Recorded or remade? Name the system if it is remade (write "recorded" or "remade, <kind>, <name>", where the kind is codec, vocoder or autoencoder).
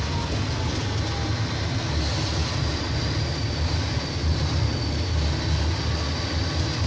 recorded